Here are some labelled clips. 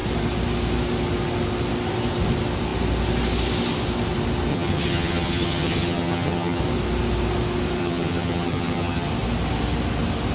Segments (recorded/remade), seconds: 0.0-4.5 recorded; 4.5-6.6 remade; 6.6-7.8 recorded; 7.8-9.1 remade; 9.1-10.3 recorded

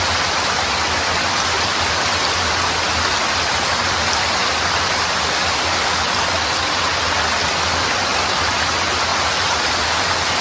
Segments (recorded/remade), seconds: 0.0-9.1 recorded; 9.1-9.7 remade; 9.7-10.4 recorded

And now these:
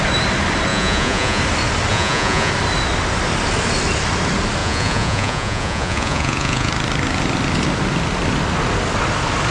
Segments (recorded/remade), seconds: 0.0-0.7 recorded; 0.7-1.4 remade; 1.4-1.9 recorded; 1.9-2.5 remade; 2.5-4.6 recorded; 4.6-6.7 remade; 6.7-9.5 recorded

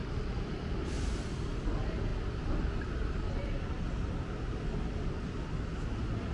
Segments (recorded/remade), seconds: 0.0-1.7 remade; 1.7-6.3 recorded

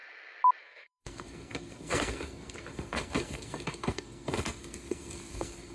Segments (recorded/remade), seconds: 0.0-0.6 recorded; 0.6-5.7 remade

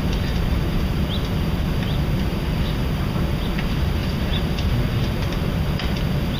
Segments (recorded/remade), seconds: 0.0-2.3 recorded; 2.3-2.9 remade; 2.9-6.4 recorded

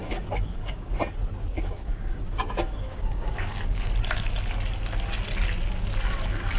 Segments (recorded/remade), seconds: 0.0-0.9 remade; 0.9-1.5 recorded; 1.5-3.9 remade; 3.9-6.6 recorded